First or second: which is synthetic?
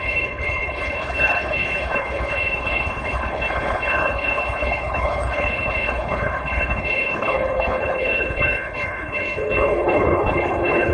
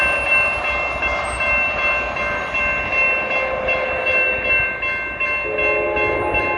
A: first